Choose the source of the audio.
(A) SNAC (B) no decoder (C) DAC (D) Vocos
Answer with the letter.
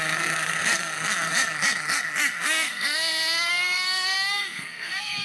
A